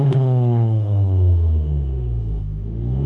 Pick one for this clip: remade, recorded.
remade